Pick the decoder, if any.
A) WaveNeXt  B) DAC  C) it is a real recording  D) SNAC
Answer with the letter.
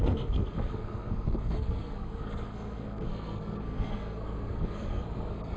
D